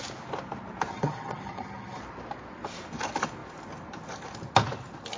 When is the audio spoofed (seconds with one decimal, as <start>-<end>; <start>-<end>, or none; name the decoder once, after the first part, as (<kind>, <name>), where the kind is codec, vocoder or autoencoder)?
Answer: 0.9-2.0 (vocoder, HiFi-GAN)